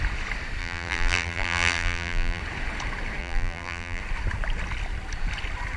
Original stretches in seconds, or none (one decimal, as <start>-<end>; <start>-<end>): 0.0-0.6; 2.4-3.2; 4.0-5.8